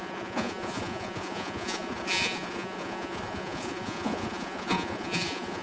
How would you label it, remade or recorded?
remade